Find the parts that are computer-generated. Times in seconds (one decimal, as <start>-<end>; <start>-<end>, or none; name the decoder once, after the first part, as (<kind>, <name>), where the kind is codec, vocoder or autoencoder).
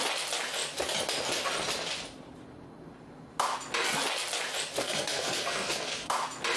4.8-6.1 (codec, SNAC)